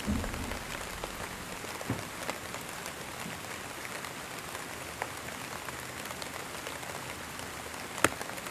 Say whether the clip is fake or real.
real